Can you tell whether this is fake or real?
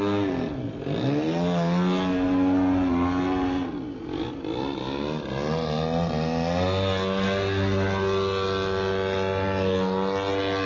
real